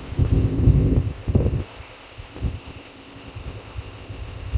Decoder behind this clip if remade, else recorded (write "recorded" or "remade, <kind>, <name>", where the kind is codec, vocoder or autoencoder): remade, codec, ZipCodec